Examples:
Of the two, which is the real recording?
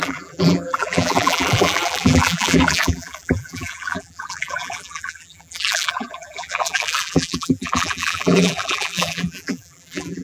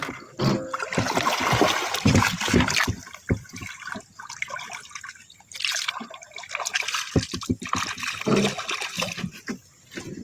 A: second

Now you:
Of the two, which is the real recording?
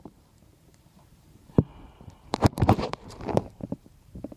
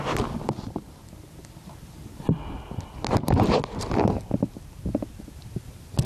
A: second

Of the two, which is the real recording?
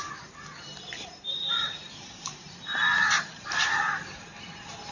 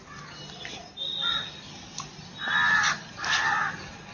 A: second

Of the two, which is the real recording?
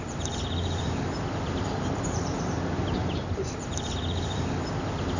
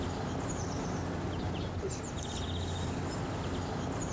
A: second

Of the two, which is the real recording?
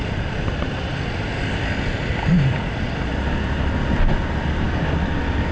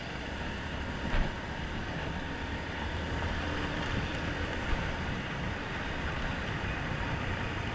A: first